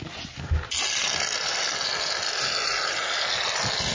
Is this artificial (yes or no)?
no